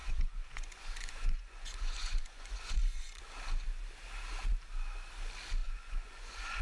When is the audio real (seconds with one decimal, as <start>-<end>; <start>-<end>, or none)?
3.2-5.6